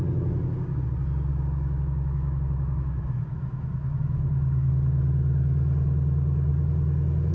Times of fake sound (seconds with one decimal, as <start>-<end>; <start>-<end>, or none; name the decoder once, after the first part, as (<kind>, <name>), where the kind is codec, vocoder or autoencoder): 1.3-4.7 (autoencoder, DAC-VAE)